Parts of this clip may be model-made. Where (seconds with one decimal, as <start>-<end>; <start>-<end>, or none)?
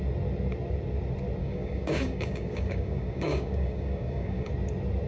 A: 1.4-4.5